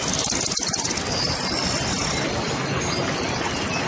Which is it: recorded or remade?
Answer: recorded